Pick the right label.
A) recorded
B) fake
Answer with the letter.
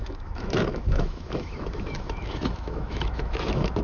B